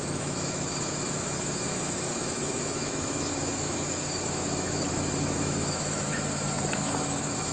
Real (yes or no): no